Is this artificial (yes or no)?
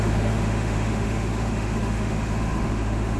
yes